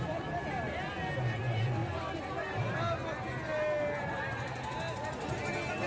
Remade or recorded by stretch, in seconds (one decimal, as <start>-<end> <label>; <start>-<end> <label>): 0.0-5.9 recorded